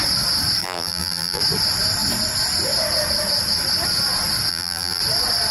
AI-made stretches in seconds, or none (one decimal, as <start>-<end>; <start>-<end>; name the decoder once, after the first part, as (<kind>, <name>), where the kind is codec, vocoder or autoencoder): 0.6-1.4 (vocoder, BigVGAN v2); 4.5-5.0